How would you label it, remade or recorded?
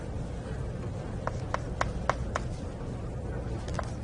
recorded